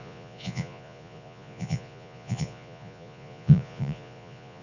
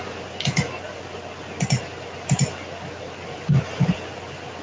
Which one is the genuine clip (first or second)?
second